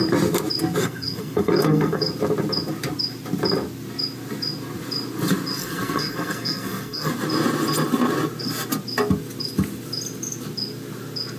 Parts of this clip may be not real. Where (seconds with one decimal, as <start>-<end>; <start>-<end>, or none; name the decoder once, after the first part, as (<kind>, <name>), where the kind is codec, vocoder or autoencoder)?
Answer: 0.8-2.1 (codec, SNAC); 5.6-7.1